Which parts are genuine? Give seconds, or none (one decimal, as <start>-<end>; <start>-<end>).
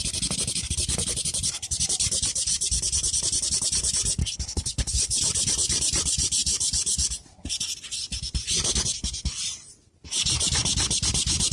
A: 0.0-4.2; 5.2-11.5